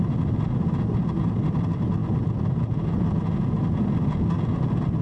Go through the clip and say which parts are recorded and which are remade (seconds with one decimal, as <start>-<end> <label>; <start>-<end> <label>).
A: 0.0-5.0 recorded

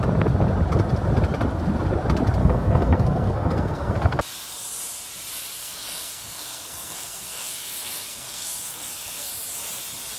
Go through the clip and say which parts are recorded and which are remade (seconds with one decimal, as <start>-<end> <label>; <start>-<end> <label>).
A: 0.0-2.4 recorded; 2.4-4.2 remade; 4.2-5.6 recorded; 5.6-9.3 remade; 9.3-10.2 recorded

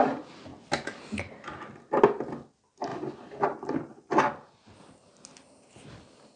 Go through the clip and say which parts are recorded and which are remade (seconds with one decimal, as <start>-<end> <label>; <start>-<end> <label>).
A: 0.0-2.9 recorded; 2.9-4.2 remade; 4.2-6.4 recorded

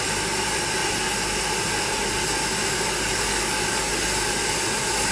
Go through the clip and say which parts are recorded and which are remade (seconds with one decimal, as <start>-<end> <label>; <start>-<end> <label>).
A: 0.0-3.3 recorded; 3.3-3.9 remade; 3.9-5.1 recorded